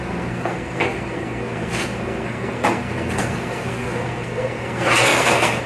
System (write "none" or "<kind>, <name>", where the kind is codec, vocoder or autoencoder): codec, SNAC